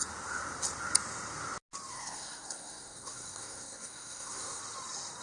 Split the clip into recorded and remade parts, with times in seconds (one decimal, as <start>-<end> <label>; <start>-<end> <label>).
0.0-1.9 recorded; 1.9-4.6 remade; 4.6-5.2 recorded

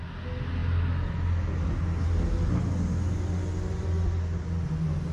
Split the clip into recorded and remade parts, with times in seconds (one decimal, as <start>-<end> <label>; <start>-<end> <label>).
0.0-5.1 recorded

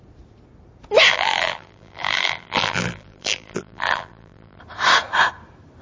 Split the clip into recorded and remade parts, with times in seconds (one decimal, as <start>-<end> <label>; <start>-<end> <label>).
0.0-1.1 recorded; 1.1-4.6 remade; 4.6-5.8 recorded

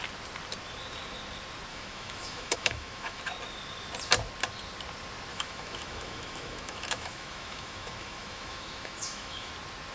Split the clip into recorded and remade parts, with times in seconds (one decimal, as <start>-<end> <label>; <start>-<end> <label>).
0.0-1.7 recorded; 1.7-3.2 remade; 3.2-5.3 recorded; 5.3-9.5 remade; 9.5-9.9 recorded

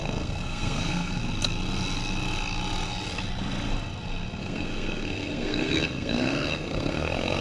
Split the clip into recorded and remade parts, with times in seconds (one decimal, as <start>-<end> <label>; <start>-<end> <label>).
0.0-1.2 remade; 1.2-4.4 recorded; 4.4-7.4 remade

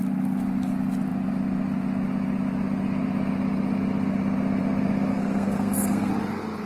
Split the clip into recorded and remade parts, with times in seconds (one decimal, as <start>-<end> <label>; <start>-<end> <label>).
0.0-5.1 recorded; 5.1-6.1 remade; 6.1-6.7 recorded